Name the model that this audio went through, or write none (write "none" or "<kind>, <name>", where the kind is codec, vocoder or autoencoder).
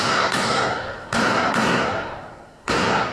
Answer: codec, SNAC